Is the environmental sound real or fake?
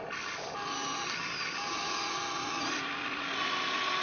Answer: real